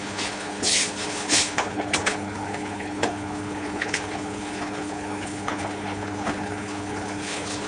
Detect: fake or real fake